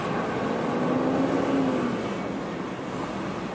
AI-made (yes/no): no